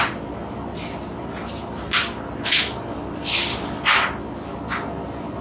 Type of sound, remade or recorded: recorded